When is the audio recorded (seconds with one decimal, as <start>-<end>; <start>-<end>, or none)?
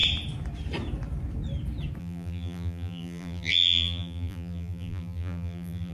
0.0-2.0